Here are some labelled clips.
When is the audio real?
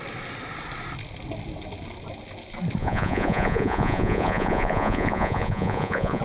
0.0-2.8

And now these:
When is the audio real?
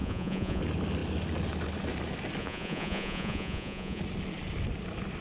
0.6-2.4; 4.0-5.2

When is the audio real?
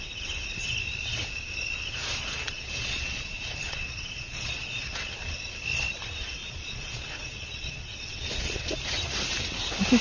0.0-2.0; 5.5-6.4; 8.7-10.0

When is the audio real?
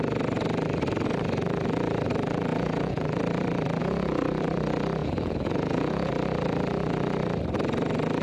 0.0-2.5; 3.2-3.8; 4.4-5.0; 6.1-8.2